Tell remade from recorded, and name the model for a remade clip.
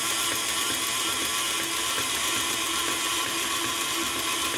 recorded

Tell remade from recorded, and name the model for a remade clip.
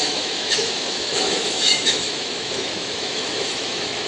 remade, autoencoder, DAC-VAE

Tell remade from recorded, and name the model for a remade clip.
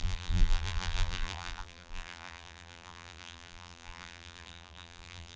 remade, vocoder, BigVGAN v2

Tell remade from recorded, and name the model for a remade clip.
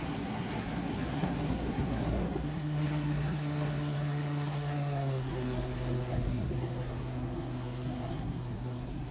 remade, codec, SNAC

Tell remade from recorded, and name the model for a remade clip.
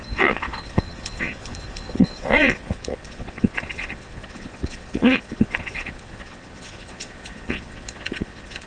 remade, vocoder, Vocos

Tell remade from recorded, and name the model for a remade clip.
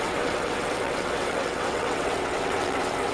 remade, vocoder, WaveNeXt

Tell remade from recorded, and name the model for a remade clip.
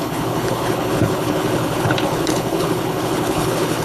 remade, codec, HILCodec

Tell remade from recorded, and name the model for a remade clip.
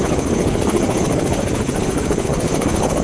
remade, codec, HILCodec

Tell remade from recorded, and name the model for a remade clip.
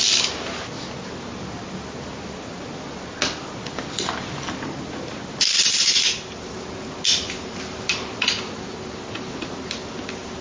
recorded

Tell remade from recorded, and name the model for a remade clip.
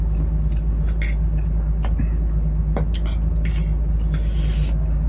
recorded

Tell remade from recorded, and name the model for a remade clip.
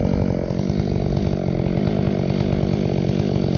recorded